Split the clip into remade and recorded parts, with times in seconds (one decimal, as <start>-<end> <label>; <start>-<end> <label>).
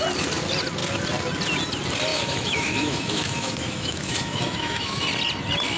0.0-2.1 recorded; 2.1-5.0 remade; 5.0-5.8 recorded